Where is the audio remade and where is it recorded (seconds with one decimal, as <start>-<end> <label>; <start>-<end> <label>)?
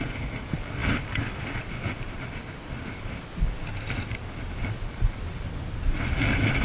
0.0-6.6 recorded